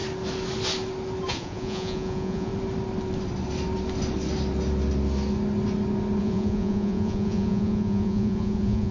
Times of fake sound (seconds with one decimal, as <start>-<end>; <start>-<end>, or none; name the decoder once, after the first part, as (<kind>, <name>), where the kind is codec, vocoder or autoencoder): 1.3-2.5 (vocoder, Vocos); 6.2-8.9